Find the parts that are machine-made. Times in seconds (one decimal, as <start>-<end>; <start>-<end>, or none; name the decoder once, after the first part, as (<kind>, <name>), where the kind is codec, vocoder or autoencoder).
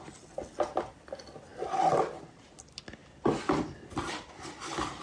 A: none